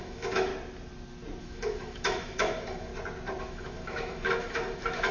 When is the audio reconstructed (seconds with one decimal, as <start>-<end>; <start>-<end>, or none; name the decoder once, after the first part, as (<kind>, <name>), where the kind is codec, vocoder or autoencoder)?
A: 0.0-0.5 (autoencoder, DAC-VAE); 1.4-2.9; 3.4-5.1